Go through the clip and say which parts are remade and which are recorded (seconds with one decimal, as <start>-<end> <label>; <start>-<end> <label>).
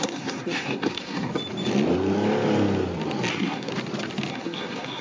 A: 0.0-1.3 remade; 1.3-3.3 recorded; 3.3-3.7 remade; 3.7-4.3 recorded; 4.3-5.0 remade